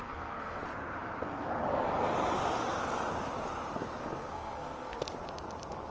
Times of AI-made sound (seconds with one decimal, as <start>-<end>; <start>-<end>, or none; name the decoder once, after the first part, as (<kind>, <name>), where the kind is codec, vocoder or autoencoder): 0.0-0.6 (codec, SNAC); 4.0-5.0